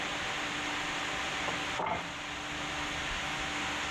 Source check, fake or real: real